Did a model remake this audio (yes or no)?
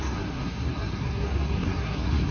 yes